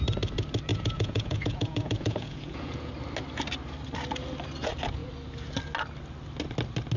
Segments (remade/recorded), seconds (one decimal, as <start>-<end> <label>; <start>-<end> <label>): 0.0-0.7 recorded; 0.7-2.9 remade; 2.9-7.0 recorded